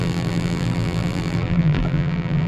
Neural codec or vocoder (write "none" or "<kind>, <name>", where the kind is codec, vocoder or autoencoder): vocoder, BigVGAN v2